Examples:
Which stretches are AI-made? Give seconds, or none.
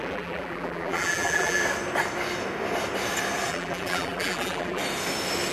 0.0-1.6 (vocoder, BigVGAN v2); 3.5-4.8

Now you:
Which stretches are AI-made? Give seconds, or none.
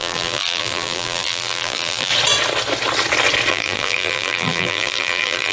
0.0-2.1 (vocoder, BigVGAN v2); 3.5-5.5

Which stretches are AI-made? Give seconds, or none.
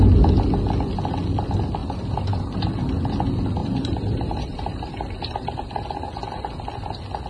1.8-2.7 (vocoder, BigVGAN v2); 3.6-6.5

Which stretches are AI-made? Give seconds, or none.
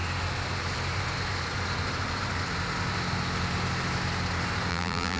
4.7-5.2 (vocoder, BigVGAN v2)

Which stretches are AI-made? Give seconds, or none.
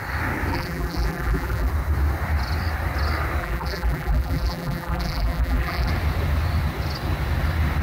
0.5-1.7 (vocoder, BigVGAN v2); 3.4-5.9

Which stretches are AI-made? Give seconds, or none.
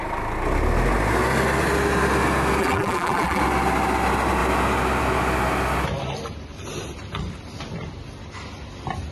2.6-3.4 (vocoder, BigVGAN v2)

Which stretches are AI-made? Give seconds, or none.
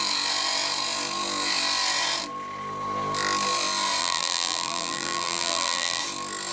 4.0-6.0 (vocoder, BigVGAN v2)